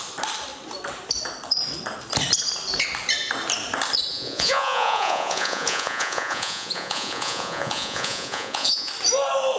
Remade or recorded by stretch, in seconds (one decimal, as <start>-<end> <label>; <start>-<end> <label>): 0.0-4.1 recorded; 4.1-8.9 remade; 8.9-9.6 recorded